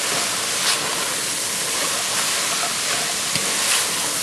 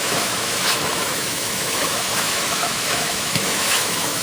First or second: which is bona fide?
first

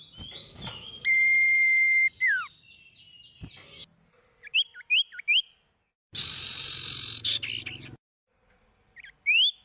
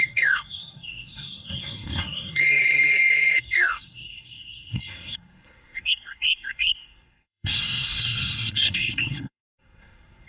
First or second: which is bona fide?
first